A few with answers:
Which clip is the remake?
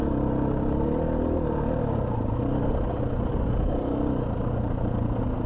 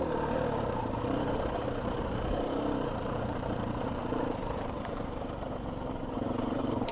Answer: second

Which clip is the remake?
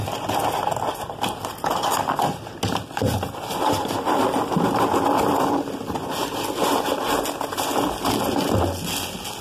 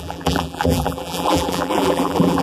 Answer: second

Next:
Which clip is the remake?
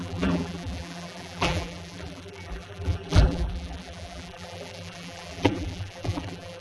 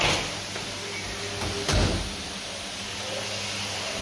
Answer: first